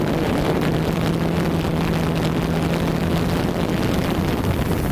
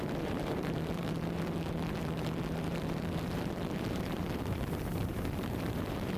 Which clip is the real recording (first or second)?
first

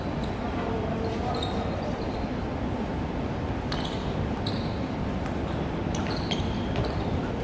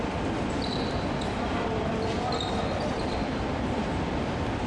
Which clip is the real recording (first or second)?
first